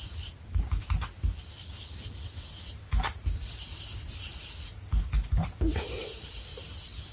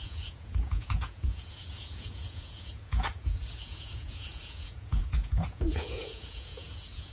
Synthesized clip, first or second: second